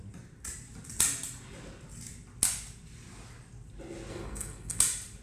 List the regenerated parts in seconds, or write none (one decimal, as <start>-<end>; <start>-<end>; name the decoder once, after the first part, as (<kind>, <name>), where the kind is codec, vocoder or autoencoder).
4.1-4.8 (codec, SNAC)